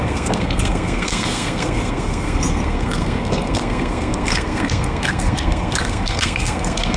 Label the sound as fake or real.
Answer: fake